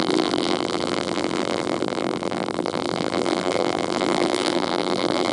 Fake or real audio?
fake